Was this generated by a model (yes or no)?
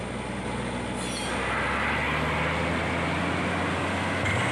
no